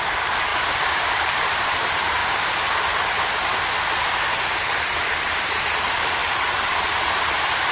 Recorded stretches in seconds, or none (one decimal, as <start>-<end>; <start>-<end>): 2.2-4.8